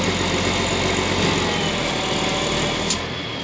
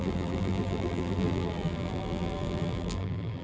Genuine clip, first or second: first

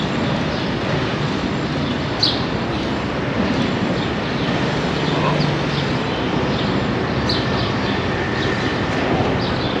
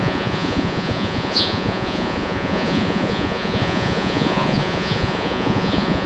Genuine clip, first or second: first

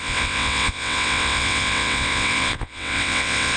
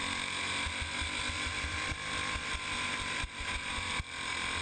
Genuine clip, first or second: second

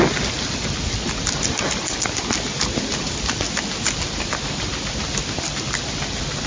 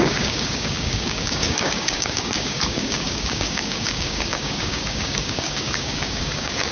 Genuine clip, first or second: first